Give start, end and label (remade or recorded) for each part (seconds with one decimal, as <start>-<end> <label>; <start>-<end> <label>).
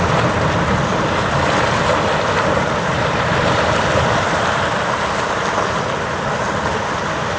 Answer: 0.0-7.4 recorded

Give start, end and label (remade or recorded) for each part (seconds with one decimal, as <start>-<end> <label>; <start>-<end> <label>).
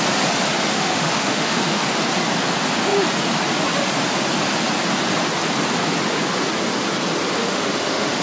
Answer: 0.0-0.7 recorded; 0.7-2.0 remade; 2.0-7.4 recorded; 7.4-8.2 remade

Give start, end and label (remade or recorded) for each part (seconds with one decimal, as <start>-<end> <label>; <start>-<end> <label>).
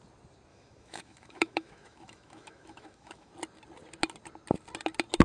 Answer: 0.0-0.5 recorded; 0.5-3.3 remade; 3.3-5.2 recorded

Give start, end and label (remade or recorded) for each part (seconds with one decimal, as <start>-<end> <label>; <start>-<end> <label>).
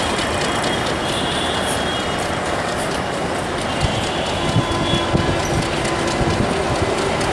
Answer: 0.0-2.4 recorded; 2.4-3.3 remade; 3.3-7.3 recorded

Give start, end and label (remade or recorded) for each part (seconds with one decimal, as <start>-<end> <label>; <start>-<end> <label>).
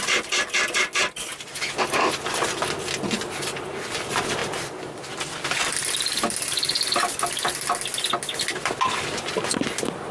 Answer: 0.0-10.1 recorded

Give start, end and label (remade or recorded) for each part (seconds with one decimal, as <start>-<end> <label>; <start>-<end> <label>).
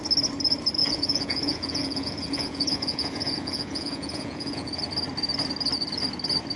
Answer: 0.0-0.8 recorded; 0.8-4.8 remade; 4.8-6.6 recorded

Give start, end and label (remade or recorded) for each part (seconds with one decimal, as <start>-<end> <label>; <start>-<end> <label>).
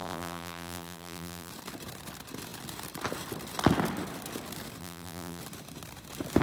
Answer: 0.0-1.5 remade; 1.5-4.8 recorded; 4.8-5.4 remade; 5.4-6.4 recorded